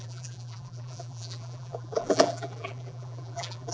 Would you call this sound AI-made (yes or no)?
yes